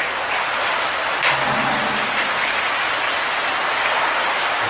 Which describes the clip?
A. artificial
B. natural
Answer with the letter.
B